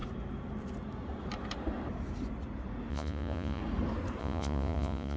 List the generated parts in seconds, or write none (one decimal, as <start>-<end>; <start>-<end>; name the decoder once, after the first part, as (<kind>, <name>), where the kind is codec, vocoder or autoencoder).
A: 2.9-3.6 (vocoder, Vocos); 4.2-5.2